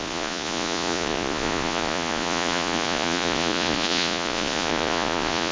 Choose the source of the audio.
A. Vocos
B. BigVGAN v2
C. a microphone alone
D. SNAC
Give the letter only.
A